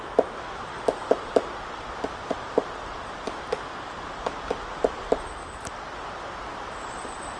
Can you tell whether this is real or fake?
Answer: real